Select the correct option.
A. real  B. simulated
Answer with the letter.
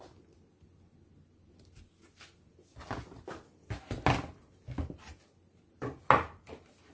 A